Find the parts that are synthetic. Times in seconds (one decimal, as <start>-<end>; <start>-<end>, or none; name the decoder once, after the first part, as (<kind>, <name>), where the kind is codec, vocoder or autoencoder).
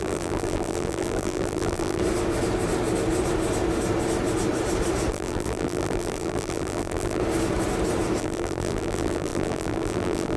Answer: 0.0-2.0 (vocoder, BigVGAN v2); 5.1-7.2; 8.2-10.4